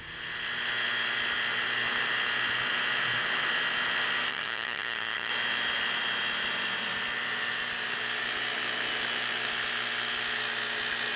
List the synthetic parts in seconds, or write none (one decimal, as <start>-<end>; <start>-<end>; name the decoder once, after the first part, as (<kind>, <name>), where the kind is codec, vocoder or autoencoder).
4.3-5.3 (vocoder, HiFi-GAN)